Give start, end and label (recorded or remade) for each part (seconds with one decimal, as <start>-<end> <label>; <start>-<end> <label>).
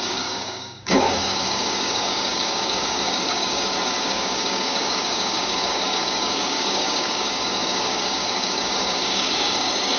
0.0-10.0 remade